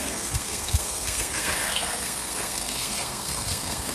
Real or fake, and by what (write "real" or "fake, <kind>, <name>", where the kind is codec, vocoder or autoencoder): fake, codec, SNAC